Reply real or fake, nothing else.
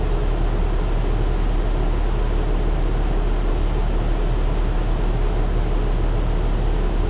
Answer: real